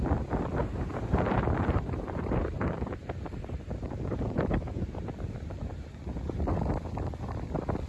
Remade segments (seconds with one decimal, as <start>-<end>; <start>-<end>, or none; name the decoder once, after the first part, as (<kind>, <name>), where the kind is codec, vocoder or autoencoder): 0.6-4.5 (vocoder, BigVGAN v2)